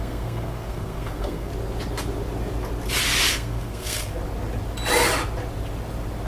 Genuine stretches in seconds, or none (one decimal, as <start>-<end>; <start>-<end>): 1.5-3.3; 4.2-6.3